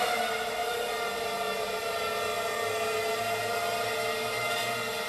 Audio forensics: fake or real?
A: real